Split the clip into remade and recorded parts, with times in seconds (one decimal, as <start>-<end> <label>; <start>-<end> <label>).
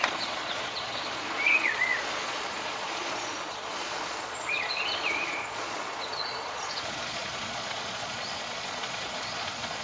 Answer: 0.0-9.8 remade